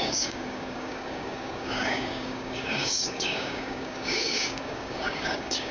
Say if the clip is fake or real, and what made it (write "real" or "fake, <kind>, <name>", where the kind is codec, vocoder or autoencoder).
fake, codec, DAC